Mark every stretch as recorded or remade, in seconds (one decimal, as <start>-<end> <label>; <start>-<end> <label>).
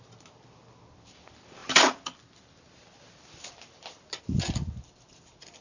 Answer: 0.0-5.6 recorded